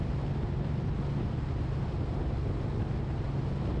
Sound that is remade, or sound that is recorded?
recorded